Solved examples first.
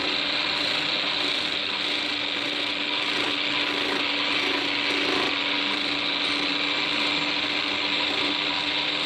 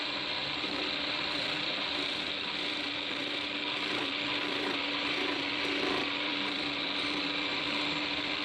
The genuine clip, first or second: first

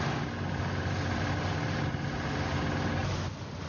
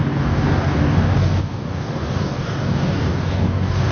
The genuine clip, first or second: first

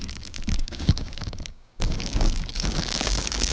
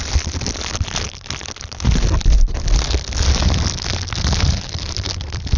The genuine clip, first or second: second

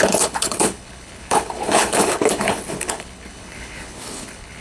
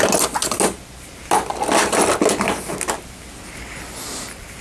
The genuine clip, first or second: second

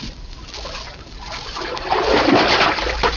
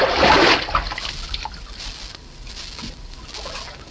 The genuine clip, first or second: second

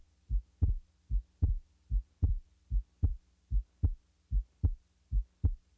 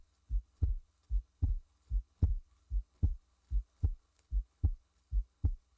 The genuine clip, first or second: first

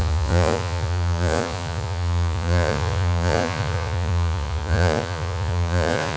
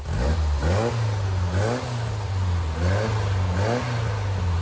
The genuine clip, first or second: second